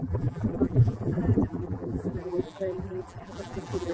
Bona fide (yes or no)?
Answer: no